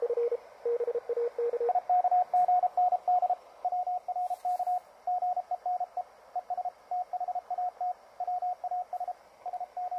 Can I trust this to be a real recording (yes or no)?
yes